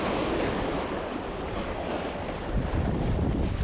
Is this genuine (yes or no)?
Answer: yes